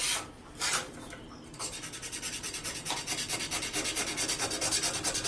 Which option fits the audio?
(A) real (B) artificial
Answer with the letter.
A